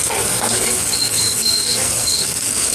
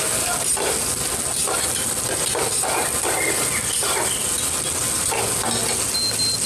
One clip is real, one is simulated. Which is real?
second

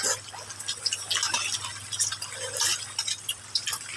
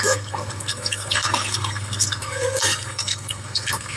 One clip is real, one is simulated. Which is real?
first